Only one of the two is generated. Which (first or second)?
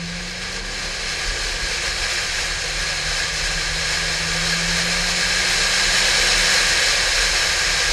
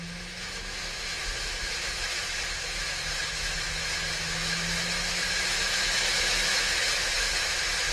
second